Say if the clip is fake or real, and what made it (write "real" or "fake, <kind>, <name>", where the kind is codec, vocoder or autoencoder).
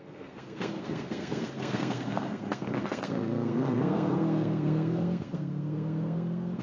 fake, codec, SNAC